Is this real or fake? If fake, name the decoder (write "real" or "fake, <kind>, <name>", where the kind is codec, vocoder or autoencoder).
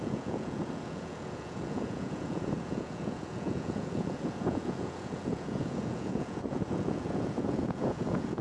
fake, vocoder, Vocos